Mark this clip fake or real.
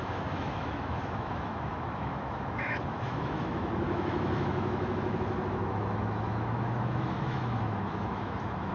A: fake